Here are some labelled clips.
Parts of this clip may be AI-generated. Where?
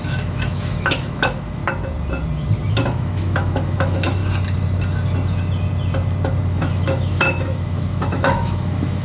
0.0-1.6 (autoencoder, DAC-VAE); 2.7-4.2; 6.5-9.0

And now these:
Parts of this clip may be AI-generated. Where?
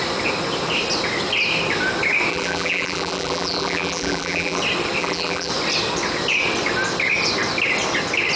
2.3-4.6 (vocoder, BigVGAN v2); 5.0-5.5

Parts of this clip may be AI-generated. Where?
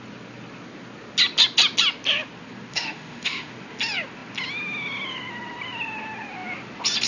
2.7-3.5 (autoencoder, DAC-VAE)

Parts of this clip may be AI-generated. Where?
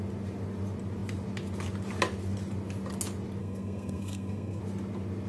3.4-4.6 (codec, SNAC)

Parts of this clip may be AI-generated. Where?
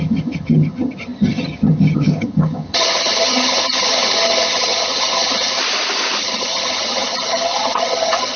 0.0-5.6 (vocoder, HiFi-GAN); 6.2-8.4